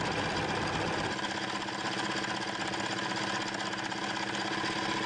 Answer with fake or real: real